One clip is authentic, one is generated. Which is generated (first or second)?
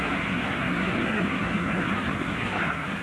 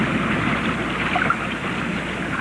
first